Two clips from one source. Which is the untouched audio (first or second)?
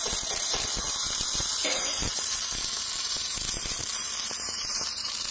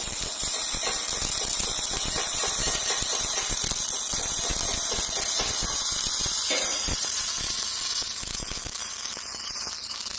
second